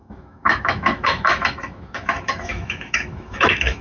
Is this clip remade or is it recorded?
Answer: remade